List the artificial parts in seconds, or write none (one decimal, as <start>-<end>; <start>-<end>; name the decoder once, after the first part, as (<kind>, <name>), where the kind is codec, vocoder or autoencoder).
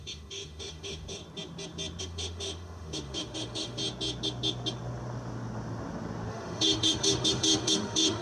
0.0-1.2 (autoencoder, DAC-VAE); 2.0-3.8; 6.3-8.2